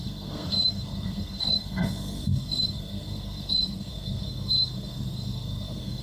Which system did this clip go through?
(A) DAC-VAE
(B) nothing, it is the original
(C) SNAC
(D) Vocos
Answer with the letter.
C